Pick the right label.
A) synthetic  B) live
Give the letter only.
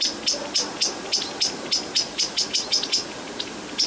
B